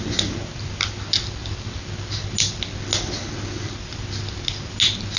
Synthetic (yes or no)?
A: no